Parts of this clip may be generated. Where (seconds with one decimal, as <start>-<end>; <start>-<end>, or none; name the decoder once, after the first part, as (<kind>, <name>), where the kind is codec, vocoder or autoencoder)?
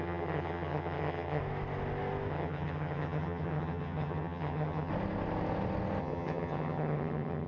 0.0-1.4 (vocoder, HiFi-GAN); 2.3-4.9; 6.0-7.5